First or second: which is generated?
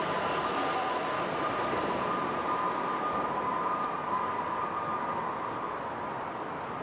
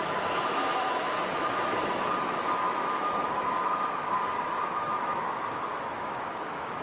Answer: second